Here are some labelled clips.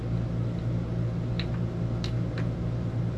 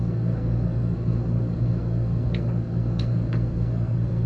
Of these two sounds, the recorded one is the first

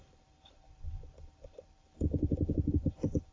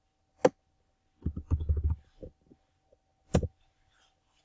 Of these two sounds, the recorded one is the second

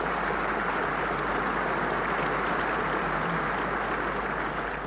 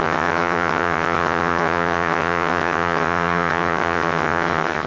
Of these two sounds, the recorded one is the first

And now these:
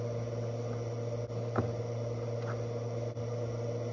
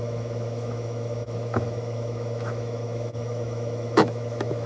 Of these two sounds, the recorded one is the first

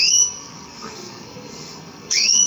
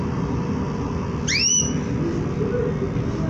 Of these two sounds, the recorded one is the second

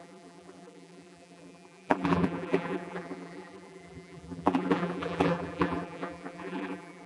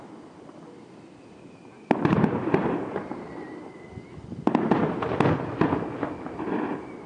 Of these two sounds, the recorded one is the second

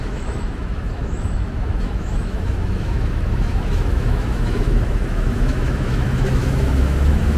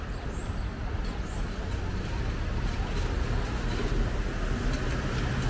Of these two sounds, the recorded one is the second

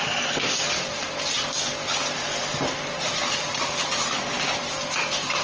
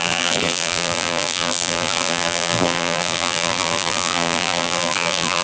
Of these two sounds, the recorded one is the first